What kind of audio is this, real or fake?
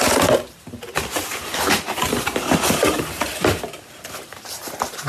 real